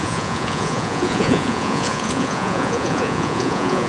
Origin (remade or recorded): remade